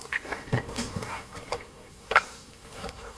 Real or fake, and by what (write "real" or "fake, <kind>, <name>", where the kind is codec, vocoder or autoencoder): fake, codec, SNAC